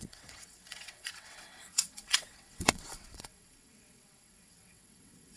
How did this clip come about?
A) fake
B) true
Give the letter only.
A